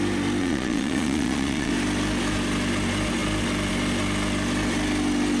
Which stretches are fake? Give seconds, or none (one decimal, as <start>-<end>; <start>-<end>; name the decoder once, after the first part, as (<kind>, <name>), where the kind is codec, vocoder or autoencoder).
0.4-1.7 (vocoder, Vocos)